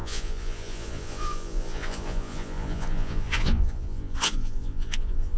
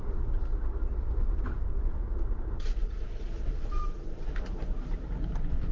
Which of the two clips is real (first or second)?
second